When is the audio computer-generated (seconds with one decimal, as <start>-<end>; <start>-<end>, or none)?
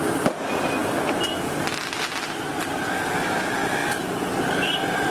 none